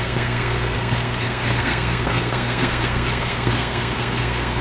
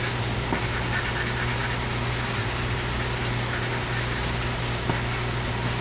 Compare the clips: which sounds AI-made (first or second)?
first